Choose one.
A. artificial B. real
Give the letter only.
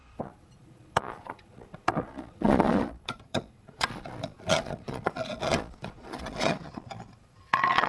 A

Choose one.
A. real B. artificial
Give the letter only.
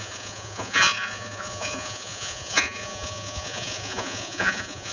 B